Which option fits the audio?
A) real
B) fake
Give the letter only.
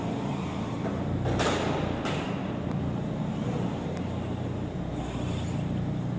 A